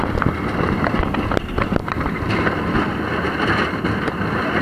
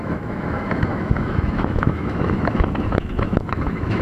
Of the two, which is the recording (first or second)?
first